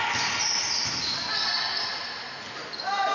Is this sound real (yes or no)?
yes